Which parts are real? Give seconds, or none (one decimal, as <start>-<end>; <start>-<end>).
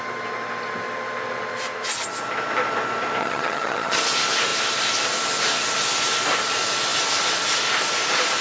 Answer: 0.0-3.2; 4.0-8.4